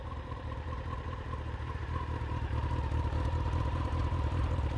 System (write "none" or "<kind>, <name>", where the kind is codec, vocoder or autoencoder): vocoder, BigVGAN v2